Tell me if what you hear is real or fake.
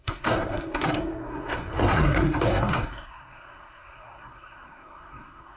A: fake